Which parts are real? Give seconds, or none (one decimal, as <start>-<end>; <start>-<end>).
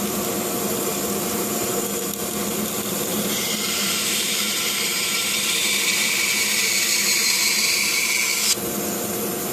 0.0-0.9; 2.1-3.1; 8.1-9.5